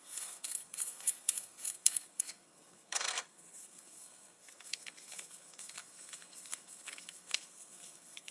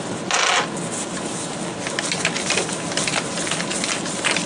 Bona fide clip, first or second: second